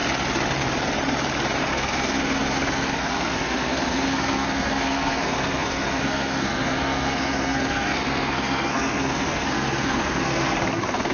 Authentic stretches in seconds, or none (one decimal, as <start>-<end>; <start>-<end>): 0.0-1.6